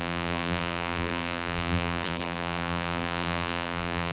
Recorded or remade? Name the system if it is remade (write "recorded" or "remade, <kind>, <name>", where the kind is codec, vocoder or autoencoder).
remade, vocoder, BigVGAN v2